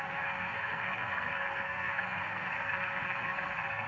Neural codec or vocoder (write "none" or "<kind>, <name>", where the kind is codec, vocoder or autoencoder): codec, SNAC